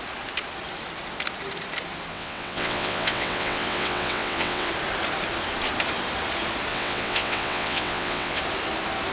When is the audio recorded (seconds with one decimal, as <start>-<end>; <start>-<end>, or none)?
0.0-2.1; 4.7-6.7; 8.4-9.1